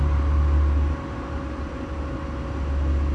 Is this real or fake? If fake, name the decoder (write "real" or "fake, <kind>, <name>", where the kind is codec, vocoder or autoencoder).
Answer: real